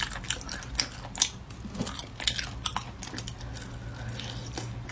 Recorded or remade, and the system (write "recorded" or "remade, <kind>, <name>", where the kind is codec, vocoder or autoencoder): recorded